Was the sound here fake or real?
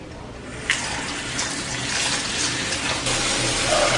real